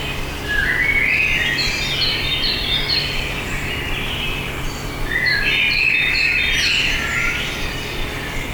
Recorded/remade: recorded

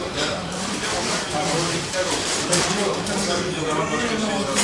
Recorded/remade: remade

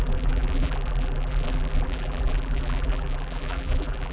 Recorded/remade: remade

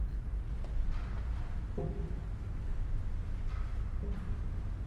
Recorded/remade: recorded